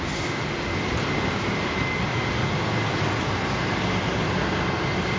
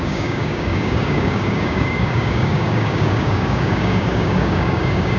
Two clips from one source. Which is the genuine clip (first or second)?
first